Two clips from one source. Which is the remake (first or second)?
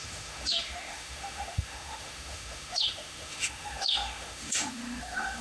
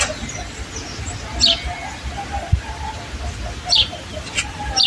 first